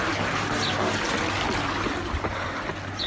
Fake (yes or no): no